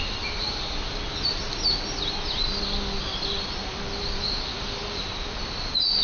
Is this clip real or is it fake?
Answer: real